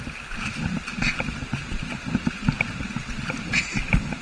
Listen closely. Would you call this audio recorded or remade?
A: recorded